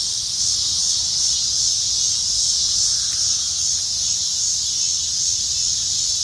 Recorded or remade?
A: recorded